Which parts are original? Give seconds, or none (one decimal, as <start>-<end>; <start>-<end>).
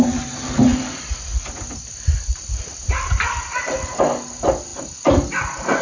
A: 0.0-5.8